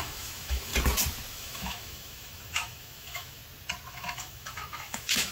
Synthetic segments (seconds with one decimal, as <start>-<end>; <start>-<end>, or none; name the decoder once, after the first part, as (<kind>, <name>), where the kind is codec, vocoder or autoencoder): 0.0-0.7 (autoencoder, DAC-VAE); 1.3-3.4; 3.9-5.3